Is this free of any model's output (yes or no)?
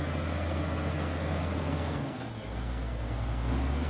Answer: no